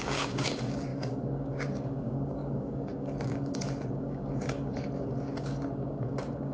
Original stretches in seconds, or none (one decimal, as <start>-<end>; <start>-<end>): none